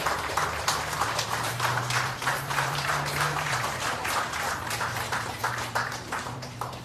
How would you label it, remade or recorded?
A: remade